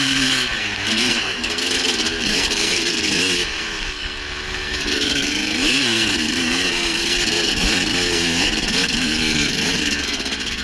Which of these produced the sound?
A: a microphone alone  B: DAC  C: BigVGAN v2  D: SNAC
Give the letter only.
D